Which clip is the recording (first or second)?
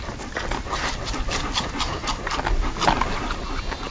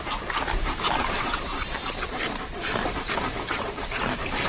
first